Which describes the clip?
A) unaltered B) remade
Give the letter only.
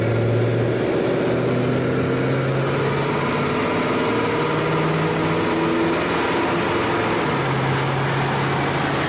A